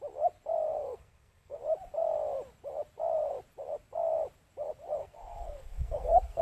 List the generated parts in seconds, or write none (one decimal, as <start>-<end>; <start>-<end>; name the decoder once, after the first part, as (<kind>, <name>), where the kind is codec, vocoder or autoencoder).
0.7-1.6 (codec, SNAC); 5.0-6.4